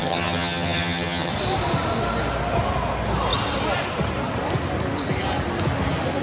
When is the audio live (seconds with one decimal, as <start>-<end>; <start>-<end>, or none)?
1.3-6.2